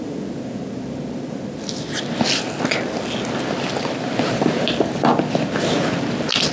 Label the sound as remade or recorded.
recorded